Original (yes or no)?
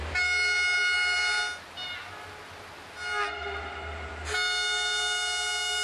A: yes